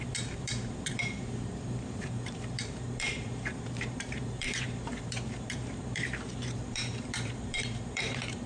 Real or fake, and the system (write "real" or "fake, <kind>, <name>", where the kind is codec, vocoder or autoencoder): fake, vocoder, BigVGAN v2